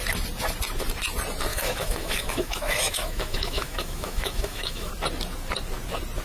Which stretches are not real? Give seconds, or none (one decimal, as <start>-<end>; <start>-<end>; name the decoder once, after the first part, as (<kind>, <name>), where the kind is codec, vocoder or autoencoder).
1.5-4.9 (autoencoder, DAC-VAE)